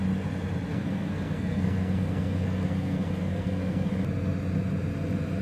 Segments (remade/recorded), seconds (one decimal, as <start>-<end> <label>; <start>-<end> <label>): 0.0-0.7 recorded; 0.7-3.9 remade; 3.9-5.4 recorded